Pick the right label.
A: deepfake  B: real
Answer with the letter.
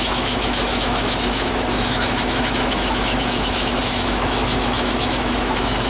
A